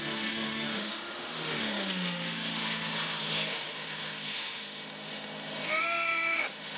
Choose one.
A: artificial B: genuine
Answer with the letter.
A